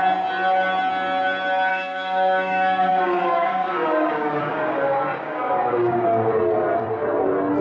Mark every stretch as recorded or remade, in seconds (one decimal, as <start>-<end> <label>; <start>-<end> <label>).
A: 0.0-1.7 recorded; 1.7-6.3 remade; 6.3-7.6 recorded